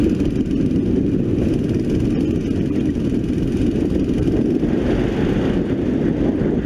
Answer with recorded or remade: recorded